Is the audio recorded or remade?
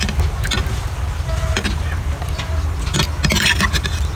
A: recorded